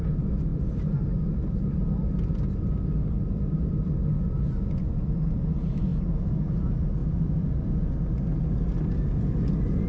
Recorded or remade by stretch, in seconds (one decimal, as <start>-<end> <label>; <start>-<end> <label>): 0.0-0.5 recorded; 0.5-3.7 remade; 3.7-9.9 recorded